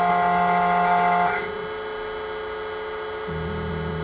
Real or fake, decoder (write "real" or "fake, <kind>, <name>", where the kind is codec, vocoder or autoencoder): real